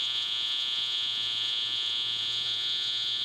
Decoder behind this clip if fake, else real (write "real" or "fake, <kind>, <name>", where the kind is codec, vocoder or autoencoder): fake, vocoder, Vocos